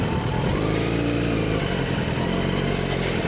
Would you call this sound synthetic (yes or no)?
no